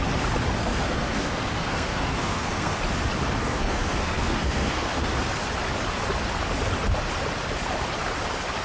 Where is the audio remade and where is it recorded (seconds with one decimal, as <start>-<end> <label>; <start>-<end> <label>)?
0.0-0.6 recorded; 0.6-2.8 remade; 2.8-3.4 recorded; 3.4-5.1 remade; 5.1-8.6 recorded